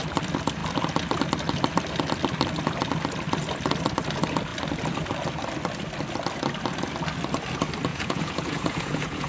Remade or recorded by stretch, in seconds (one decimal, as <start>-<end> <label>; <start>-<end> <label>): 0.0-7.9 recorded; 7.9-9.3 remade